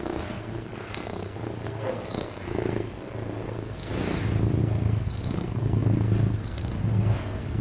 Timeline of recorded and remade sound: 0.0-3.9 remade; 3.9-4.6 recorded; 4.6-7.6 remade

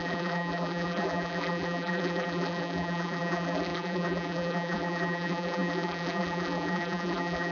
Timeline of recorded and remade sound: 0.0-7.5 remade

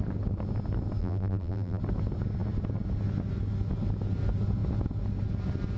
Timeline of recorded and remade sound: 0.0-1.0 recorded; 1.0-1.8 remade; 1.8-5.8 recorded

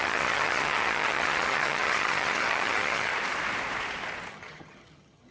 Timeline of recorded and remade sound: 0.0-3.1 remade; 3.1-4.3 recorded; 4.3-5.3 remade